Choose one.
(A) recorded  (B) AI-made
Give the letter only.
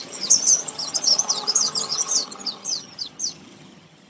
B